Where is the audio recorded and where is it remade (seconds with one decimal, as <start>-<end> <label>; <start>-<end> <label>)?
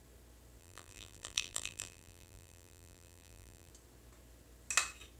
0.0-0.6 recorded; 0.6-3.7 remade; 3.7-5.2 recorded